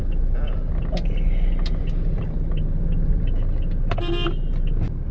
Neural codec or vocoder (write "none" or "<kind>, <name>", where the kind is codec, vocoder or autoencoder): none